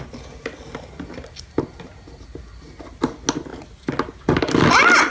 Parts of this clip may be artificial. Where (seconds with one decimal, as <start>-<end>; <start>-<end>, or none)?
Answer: none